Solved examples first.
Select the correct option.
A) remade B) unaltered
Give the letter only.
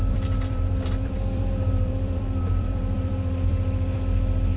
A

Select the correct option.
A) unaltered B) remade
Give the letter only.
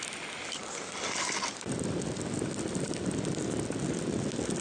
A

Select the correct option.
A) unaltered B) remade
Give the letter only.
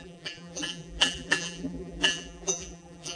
B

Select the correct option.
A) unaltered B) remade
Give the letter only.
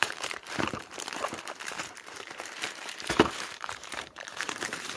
B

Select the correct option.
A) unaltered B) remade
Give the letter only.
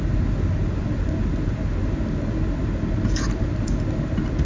A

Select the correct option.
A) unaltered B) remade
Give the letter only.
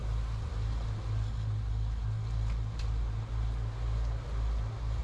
A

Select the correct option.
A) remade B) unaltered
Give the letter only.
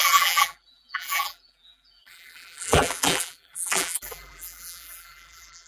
A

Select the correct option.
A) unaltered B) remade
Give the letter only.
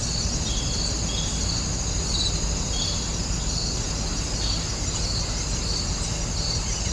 A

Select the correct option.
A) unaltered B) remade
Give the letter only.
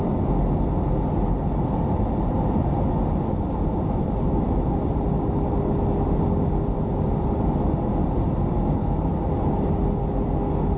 A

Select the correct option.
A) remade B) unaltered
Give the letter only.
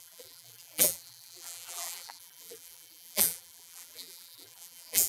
A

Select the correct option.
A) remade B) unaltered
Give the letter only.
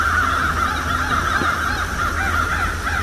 B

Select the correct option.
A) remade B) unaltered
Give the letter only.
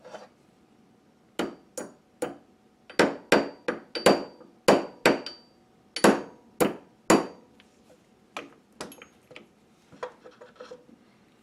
B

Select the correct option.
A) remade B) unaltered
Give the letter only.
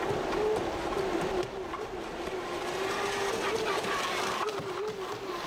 B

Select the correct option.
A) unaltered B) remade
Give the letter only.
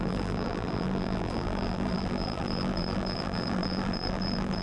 B